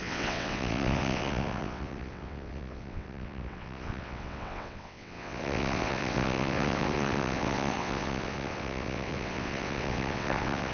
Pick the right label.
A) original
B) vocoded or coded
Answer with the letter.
B